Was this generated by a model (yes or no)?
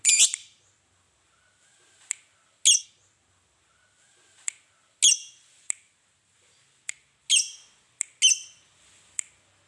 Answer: no